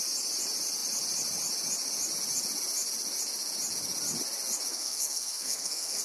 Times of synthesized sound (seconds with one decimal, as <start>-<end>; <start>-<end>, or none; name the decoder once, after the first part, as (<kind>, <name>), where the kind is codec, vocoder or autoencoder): 4.7-6.0 (codec, SNAC)